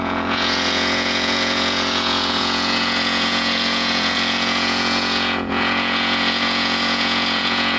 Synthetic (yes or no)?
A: yes